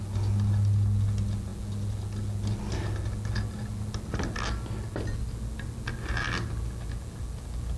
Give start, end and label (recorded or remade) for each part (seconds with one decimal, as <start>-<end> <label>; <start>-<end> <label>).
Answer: 0.0-7.8 recorded